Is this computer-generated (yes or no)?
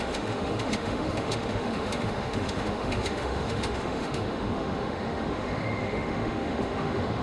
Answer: yes